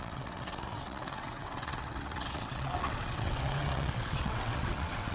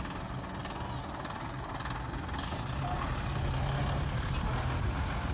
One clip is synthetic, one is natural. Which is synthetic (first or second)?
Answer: first